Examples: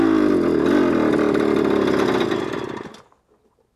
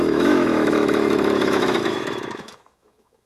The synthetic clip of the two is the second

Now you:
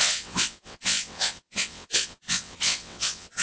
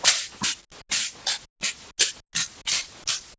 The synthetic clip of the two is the first